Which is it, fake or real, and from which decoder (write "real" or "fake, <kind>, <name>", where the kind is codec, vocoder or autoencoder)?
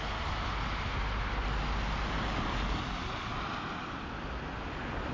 real